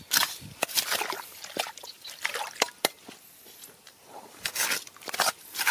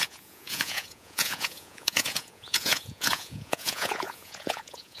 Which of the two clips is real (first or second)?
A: first